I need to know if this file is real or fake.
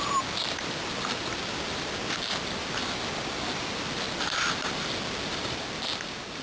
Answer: real